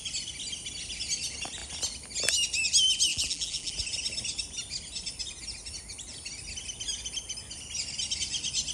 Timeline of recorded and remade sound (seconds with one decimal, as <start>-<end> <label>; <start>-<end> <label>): 0.0-3.1 recorded; 3.1-3.7 remade; 3.7-8.7 recorded